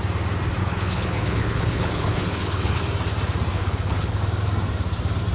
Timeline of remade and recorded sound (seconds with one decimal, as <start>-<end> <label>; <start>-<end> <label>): 0.0-0.6 recorded; 0.6-2.8 remade; 2.8-3.5 recorded; 3.5-4.2 remade; 4.2-5.3 recorded